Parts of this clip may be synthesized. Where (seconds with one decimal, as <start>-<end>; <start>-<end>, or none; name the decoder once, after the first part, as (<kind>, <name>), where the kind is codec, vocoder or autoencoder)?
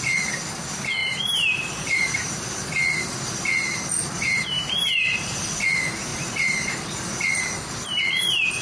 1.0-2.3 (vocoder, BigVGAN v2); 4.0-5.6; 6.1-7.2